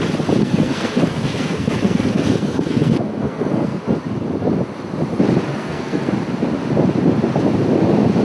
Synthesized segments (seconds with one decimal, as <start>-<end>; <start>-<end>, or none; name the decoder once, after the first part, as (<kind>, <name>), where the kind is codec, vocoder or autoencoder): 0.4-3.8 (codec, SNAC); 5.5-6.1